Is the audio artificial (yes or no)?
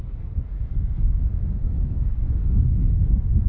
yes